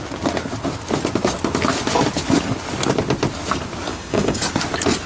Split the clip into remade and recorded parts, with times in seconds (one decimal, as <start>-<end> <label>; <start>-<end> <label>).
0.0-3.9 recorded; 3.9-4.4 remade; 4.4-5.1 recorded